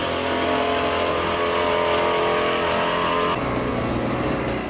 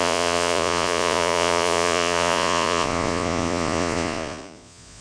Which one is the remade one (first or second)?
second